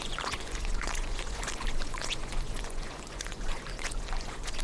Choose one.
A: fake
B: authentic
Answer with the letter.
A